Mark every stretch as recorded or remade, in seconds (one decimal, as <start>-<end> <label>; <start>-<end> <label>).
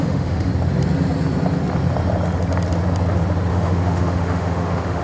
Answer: 0.0-0.5 remade; 0.5-3.5 recorded; 3.5-5.0 remade